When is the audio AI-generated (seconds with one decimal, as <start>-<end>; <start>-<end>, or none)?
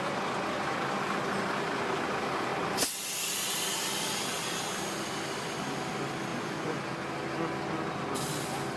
6.3-6.8